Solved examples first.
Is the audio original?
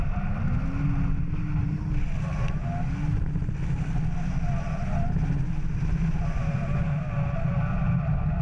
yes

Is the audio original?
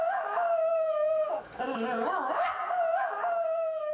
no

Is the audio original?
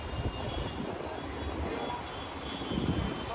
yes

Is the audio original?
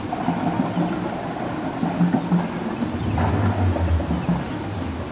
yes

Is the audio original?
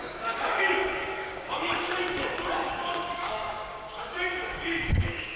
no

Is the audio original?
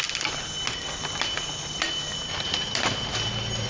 yes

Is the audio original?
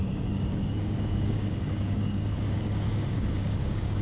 no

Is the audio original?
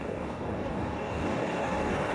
no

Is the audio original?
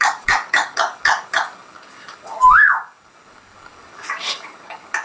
no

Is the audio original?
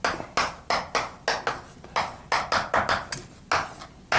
yes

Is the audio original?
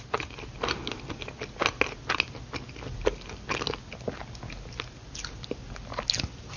yes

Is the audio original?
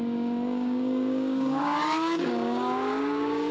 no